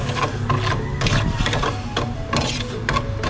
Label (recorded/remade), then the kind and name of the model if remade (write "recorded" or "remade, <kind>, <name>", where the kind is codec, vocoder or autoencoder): recorded